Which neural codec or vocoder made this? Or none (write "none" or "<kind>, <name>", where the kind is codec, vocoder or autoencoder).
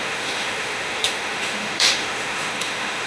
autoencoder, DAC-VAE